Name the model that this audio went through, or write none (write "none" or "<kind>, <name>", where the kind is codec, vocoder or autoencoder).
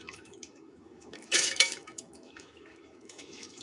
autoencoder, DAC-VAE